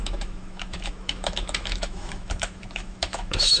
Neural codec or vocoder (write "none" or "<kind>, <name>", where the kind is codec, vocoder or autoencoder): autoencoder, DAC-VAE